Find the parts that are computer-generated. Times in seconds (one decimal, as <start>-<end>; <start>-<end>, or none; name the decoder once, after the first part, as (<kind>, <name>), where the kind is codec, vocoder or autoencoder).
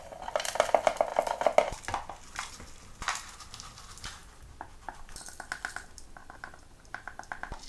none